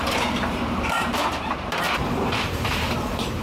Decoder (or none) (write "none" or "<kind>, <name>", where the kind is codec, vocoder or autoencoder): vocoder, BigVGAN v2